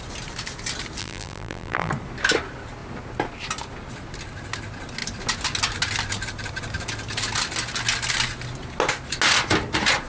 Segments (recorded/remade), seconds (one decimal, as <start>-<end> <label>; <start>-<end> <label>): 0.0-1.0 recorded; 1.0-1.9 remade; 1.9-10.1 recorded

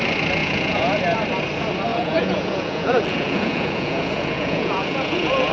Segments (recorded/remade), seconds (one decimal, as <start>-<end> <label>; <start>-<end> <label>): 0.0-0.4 recorded; 0.4-1.0 remade; 1.0-1.9 recorded; 1.9-5.5 remade

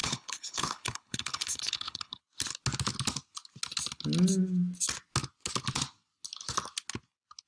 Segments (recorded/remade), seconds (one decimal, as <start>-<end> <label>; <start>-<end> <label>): 0.0-2.2 remade; 2.2-7.5 recorded

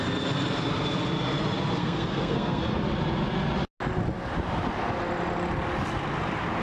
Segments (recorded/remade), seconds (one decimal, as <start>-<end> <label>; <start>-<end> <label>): 0.0-1.8 recorded; 1.8-2.6 remade; 2.6-6.6 recorded

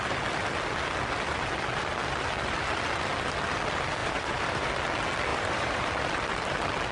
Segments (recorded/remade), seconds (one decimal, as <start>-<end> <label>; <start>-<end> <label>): 0.0-4.0 recorded; 4.0-4.7 remade; 4.7-5.3 recorded; 5.3-5.9 remade; 5.9-6.9 recorded

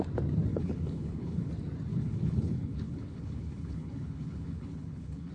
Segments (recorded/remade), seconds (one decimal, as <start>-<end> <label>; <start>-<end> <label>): 0.0-0.5 recorded; 0.5-1.5 remade; 1.5-1.9 recorded; 1.9-5.3 remade